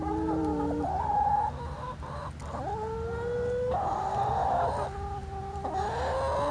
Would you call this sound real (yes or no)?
yes